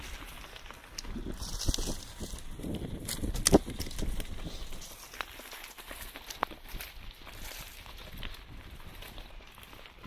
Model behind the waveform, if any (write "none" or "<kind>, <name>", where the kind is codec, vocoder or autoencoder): none